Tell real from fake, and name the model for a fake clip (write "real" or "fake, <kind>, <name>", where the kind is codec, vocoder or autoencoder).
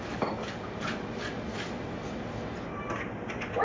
real